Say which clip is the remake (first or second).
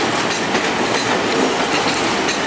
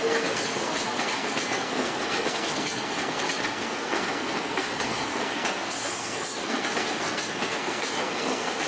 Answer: second